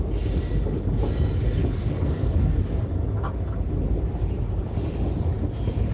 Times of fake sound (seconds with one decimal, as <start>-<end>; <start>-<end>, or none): 1.6-2.6